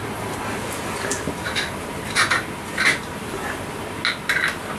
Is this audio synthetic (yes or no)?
no